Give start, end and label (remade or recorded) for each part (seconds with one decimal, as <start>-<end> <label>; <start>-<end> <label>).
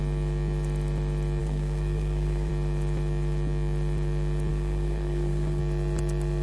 0.0-1.4 recorded; 1.4-2.5 remade; 2.5-4.5 recorded; 4.5-5.6 remade; 5.6-6.4 recorded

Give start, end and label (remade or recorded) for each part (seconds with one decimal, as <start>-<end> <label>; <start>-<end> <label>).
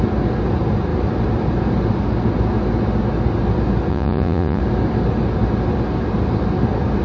0.0-3.9 recorded; 3.9-4.6 remade; 4.6-7.0 recorded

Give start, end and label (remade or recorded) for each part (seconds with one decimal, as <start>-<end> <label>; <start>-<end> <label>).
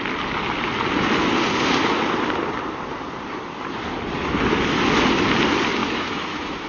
0.0-5.8 recorded; 5.8-6.7 remade